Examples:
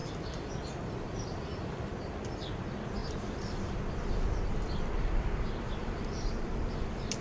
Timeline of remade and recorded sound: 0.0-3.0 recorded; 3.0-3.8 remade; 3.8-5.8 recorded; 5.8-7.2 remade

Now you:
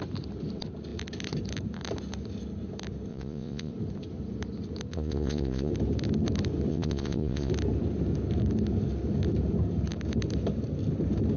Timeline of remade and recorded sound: 0.0-3.1 recorded; 3.1-3.7 remade; 3.7-4.9 recorded; 4.9-5.7 remade; 5.7-6.7 recorded; 6.7-7.5 remade; 7.5-11.4 recorded

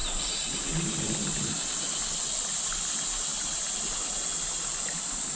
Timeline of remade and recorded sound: 0.0-5.4 recorded